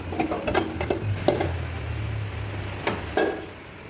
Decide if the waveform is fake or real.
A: real